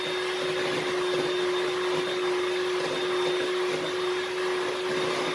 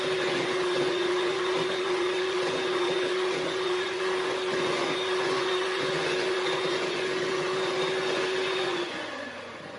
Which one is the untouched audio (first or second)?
first